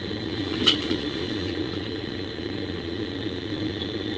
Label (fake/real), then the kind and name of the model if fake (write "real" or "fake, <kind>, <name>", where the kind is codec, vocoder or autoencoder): fake, vocoder, Vocos